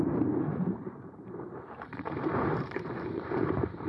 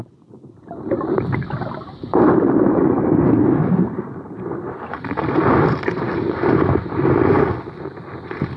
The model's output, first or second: first